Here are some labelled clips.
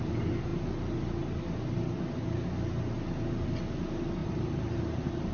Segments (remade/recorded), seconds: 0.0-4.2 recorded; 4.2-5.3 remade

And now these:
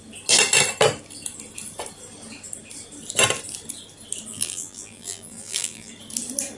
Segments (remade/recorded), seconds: 0.0-4.3 recorded; 4.3-5.9 remade; 5.9-6.6 recorded

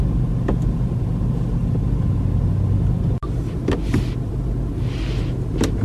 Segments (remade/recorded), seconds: 0.0-5.8 recorded

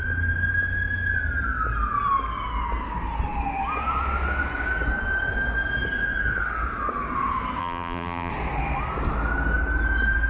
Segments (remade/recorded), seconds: 0.0-7.6 recorded; 7.6-8.3 remade; 8.3-10.3 recorded

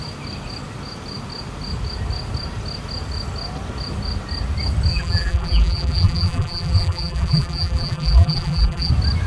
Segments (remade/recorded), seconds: 0.0-4.9 recorded; 4.9-8.9 remade; 8.9-9.3 recorded

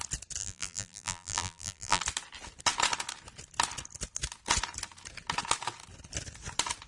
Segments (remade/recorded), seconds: 0.0-0.4 recorded; 0.4-2.0 remade; 2.0-6.9 recorded